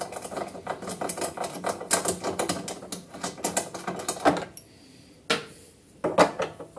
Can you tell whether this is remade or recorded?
recorded